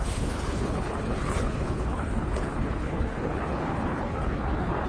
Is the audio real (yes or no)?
no